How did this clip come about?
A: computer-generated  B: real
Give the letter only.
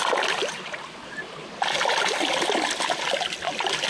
B